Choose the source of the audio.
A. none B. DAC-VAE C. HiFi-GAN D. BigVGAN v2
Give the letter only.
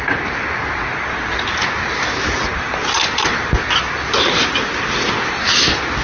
A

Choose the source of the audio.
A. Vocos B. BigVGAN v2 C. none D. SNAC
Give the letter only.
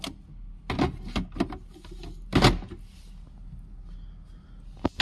C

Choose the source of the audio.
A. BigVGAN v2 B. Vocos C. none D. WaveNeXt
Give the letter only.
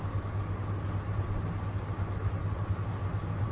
C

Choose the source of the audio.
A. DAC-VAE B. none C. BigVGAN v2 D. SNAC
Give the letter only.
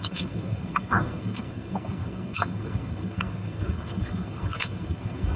D